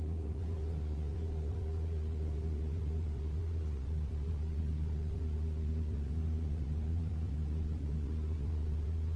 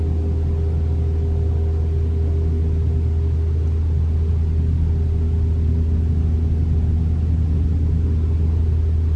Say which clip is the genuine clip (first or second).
second